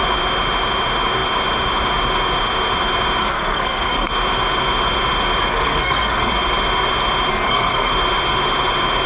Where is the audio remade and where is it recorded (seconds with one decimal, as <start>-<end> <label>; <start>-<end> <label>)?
0.0-3.2 recorded; 3.2-4.1 remade; 4.1-5.5 recorded; 5.5-6.3 remade; 6.3-7.3 recorded; 7.3-7.9 remade; 7.9-9.1 recorded